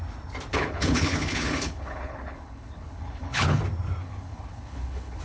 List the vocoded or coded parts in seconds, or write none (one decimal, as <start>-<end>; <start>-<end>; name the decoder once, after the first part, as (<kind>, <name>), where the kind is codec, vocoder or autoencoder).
0.5-3.6 (codec, HILCodec); 4.0-5.2